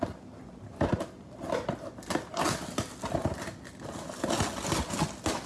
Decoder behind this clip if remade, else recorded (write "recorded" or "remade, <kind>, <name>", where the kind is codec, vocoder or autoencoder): recorded